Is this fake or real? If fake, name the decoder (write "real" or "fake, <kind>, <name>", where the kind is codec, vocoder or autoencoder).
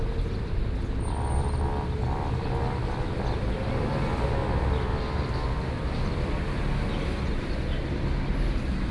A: real